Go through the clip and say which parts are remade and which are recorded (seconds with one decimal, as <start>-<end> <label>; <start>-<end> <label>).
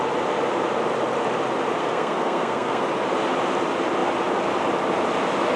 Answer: 0.0-1.8 recorded; 1.8-2.9 remade; 2.9-5.6 recorded